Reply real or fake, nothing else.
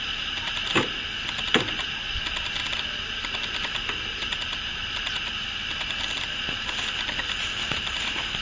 real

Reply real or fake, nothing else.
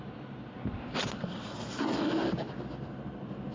real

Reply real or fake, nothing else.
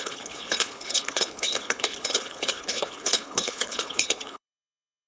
fake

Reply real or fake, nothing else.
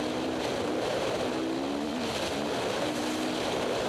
real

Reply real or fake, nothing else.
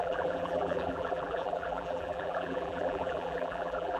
fake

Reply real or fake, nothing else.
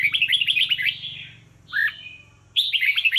real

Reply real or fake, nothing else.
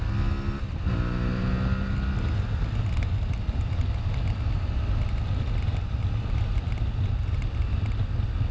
real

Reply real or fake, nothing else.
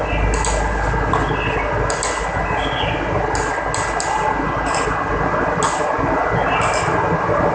real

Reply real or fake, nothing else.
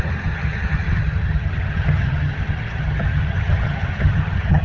fake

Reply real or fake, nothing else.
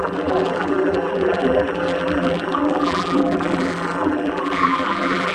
fake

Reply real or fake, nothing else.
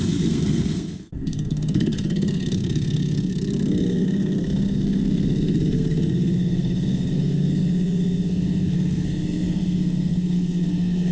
fake